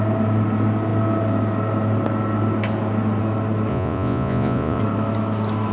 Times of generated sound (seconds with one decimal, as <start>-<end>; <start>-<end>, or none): 3.7-4.8

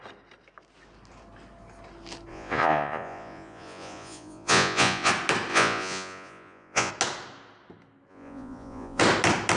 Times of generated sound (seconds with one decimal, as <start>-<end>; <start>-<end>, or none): 2.3-5.1; 5.5-6.9; 8.1-9.0

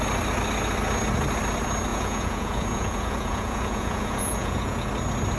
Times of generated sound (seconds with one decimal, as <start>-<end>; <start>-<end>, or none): 1.9-4.9

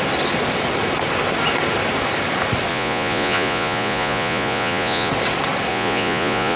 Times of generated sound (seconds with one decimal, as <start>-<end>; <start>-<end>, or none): 2.7-5.1; 5.7-6.6

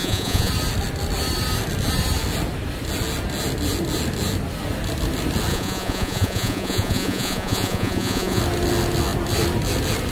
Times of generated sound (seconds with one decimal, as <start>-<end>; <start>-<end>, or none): 0.0-0.5; 5.5-8.4

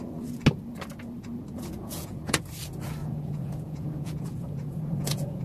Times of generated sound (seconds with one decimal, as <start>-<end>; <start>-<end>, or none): 1.8-2.4; 3.0-5.4

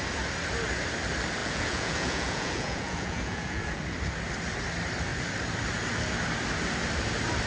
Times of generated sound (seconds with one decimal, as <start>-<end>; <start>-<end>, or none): 1.4-3.8